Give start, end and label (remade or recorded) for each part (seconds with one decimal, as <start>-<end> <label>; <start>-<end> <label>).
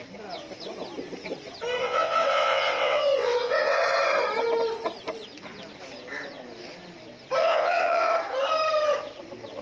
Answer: 0.0-1.8 recorded; 1.8-3.8 remade; 3.8-7.4 recorded; 7.4-8.1 remade; 8.1-9.6 recorded